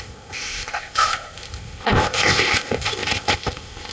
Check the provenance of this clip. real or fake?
fake